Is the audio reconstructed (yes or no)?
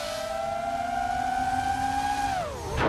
no